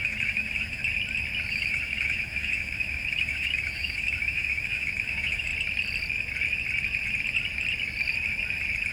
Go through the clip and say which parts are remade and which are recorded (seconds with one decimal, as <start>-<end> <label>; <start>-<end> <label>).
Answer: 0.0-0.8 remade; 0.8-1.5 recorded; 1.5-5.5 remade; 5.5-8.9 recorded